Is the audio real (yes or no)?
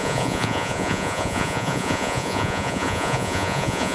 no